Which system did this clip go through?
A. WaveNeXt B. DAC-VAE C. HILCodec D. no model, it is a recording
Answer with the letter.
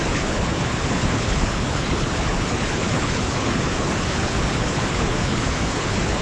C